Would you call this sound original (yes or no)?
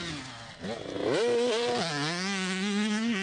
yes